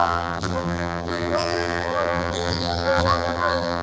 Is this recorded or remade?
remade